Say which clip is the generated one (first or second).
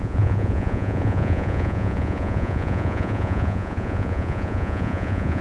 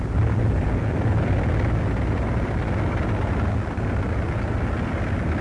first